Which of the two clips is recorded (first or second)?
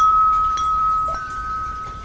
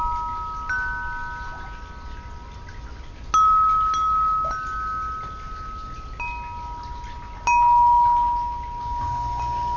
second